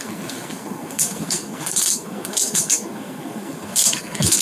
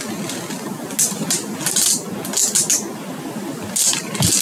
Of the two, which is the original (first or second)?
second